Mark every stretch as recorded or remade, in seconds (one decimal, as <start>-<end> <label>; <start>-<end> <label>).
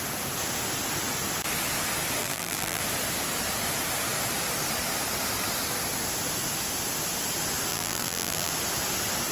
0.0-2.2 recorded; 2.2-2.8 remade; 2.8-7.7 recorded; 7.7-8.5 remade; 8.5-9.3 recorded